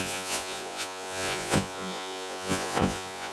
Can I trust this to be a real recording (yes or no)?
no